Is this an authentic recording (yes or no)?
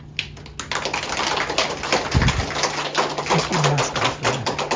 yes